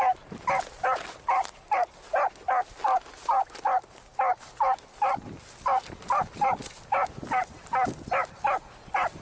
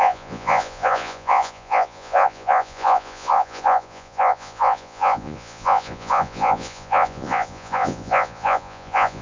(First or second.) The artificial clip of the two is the second